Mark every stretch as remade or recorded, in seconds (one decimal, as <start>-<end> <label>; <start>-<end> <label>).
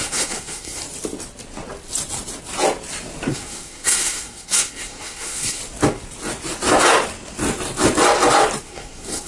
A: 0.0-0.8 remade; 0.8-3.3 recorded; 3.3-5.6 remade; 5.6-8.6 recorded; 8.6-9.3 remade